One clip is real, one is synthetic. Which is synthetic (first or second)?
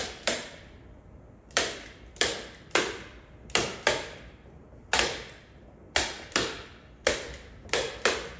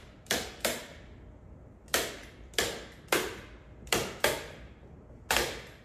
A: first